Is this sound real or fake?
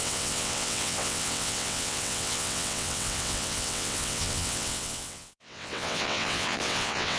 fake